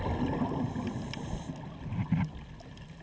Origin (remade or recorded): recorded